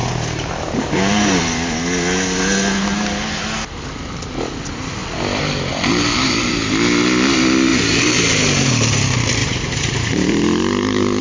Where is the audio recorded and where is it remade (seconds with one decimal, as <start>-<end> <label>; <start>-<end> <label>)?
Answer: 0.0-1.4 remade; 1.4-7.7 recorded; 7.7-8.7 remade; 8.7-9.4 recorded; 9.4-11.2 remade